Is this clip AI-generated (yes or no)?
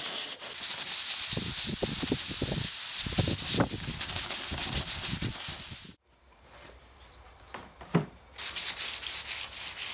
no